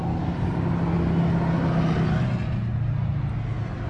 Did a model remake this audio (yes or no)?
no